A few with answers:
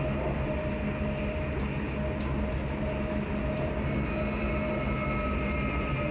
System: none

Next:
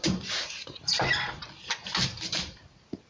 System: vocoder, BigVGAN v2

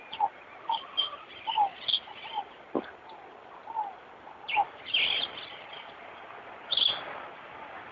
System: none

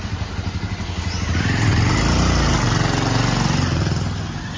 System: none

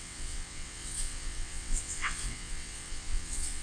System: vocoder, WaveNeXt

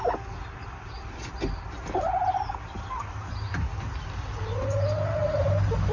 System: none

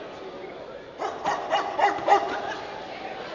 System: none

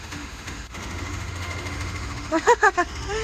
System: autoencoder, DAC-VAE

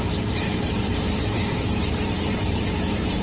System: vocoder, BigVGAN v2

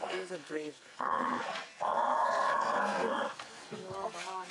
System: codec, SNAC